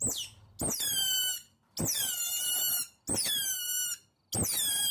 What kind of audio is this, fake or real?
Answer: real